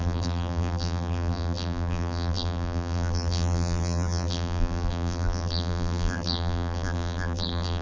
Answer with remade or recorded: remade